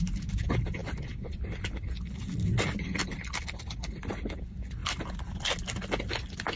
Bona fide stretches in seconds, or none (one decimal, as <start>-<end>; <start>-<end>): 0.0-6.6